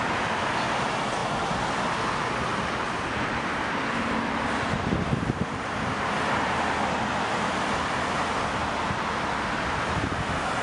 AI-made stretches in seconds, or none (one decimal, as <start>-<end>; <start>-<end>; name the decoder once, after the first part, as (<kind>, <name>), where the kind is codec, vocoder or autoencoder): none